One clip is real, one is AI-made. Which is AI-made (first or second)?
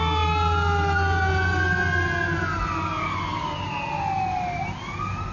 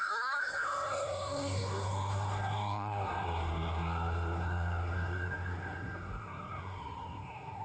second